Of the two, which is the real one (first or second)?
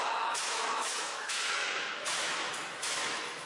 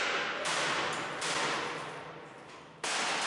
second